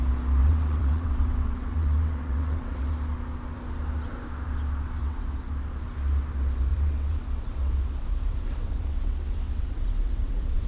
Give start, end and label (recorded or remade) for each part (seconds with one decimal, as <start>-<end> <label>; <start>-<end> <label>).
0.0-0.4 recorded; 0.4-2.9 remade; 2.9-5.0 recorded; 5.0-5.5 remade; 5.5-6.7 recorded; 6.7-10.7 remade